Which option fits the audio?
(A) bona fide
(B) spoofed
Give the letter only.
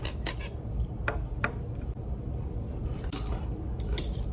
A